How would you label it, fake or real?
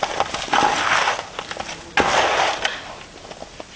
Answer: real